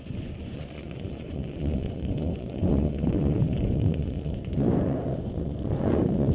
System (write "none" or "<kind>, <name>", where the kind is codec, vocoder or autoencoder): vocoder, Vocos